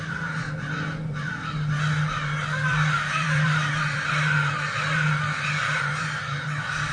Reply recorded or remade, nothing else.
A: remade